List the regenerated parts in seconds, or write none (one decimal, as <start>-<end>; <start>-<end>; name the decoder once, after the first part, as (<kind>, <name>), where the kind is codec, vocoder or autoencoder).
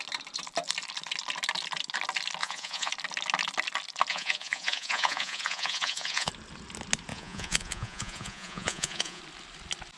2.4-2.9 (vocoder, Vocos); 4.1-6.3; 7.1-9.2